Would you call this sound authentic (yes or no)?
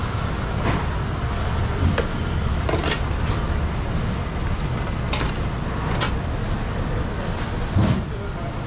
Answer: yes